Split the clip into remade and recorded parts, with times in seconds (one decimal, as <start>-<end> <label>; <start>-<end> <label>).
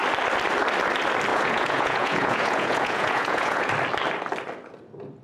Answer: 0.0-1.3 recorded; 1.3-3.7 remade; 3.7-5.2 recorded